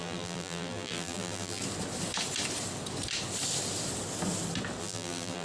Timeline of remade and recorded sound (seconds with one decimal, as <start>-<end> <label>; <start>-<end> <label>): 0.0-1.6 remade; 1.6-4.8 recorded; 4.8-5.4 remade